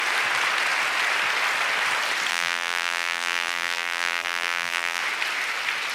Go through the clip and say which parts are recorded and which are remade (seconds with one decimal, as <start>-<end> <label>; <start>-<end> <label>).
0.0-2.3 recorded; 2.3-5.0 remade; 5.0-5.9 recorded